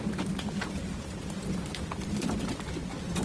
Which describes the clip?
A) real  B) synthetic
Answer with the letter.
A